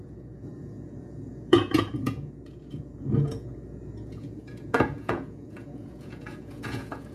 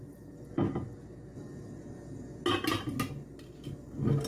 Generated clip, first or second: first